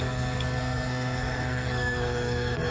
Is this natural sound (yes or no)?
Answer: no